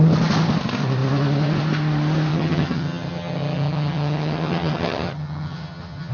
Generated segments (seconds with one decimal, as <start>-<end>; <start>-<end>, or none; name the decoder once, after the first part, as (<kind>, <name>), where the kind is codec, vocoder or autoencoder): 2.3-6.1 (vocoder, HiFi-GAN)